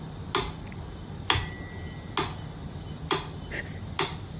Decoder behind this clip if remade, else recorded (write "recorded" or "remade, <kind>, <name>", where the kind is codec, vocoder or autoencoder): recorded